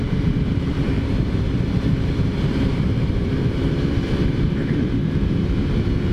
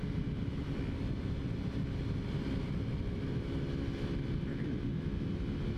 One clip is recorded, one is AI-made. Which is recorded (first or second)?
second